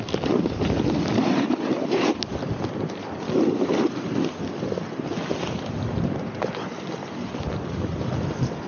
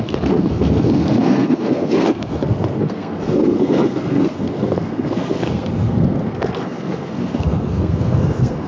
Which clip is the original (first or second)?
first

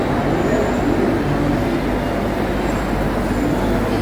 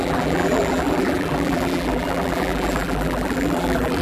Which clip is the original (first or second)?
first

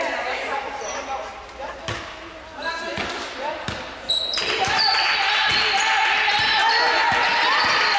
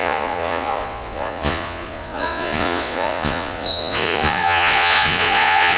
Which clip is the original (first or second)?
first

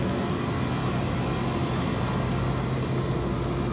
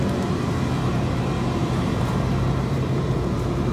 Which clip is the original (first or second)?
first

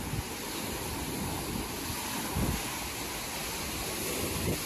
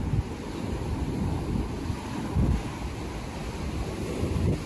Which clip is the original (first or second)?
first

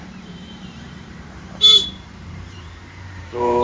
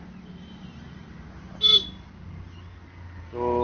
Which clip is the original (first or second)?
second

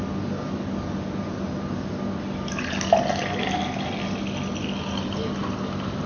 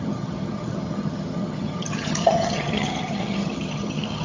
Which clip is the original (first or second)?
first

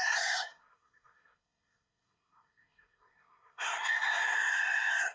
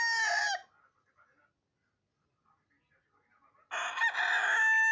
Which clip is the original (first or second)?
second